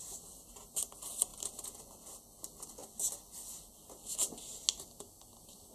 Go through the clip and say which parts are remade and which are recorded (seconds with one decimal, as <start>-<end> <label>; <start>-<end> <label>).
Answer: 0.0-5.7 recorded

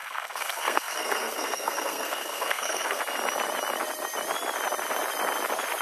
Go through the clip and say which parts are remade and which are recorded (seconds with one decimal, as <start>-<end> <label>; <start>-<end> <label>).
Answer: 0.0-3.0 remade; 3.0-5.8 recorded